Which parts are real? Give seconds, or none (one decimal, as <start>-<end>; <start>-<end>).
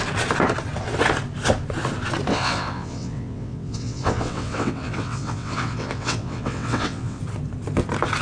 0.0-2.3; 7.2-8.2